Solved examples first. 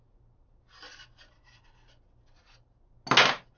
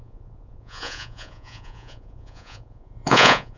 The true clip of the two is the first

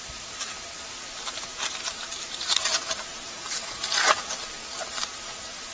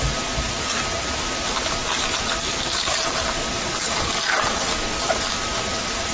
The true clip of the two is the second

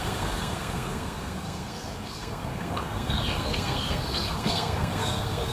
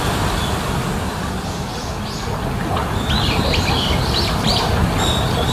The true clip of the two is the second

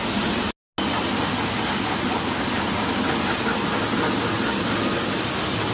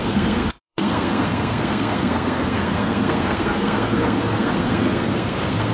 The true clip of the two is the first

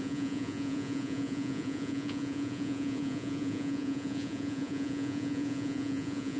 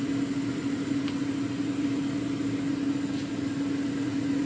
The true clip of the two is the second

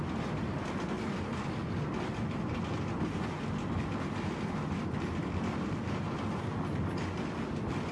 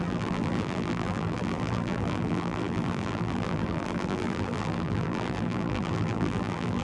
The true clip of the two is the first